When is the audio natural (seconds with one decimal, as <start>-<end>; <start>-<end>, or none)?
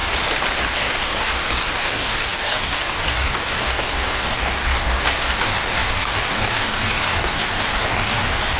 0.0-0.6